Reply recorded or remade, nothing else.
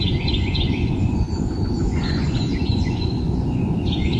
remade